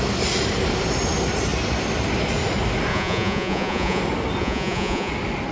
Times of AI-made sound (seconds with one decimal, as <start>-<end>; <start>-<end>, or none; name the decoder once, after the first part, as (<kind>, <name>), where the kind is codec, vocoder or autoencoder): 2.9-4.0 (vocoder, Vocos); 4.4-5.1